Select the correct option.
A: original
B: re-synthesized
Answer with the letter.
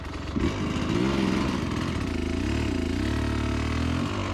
A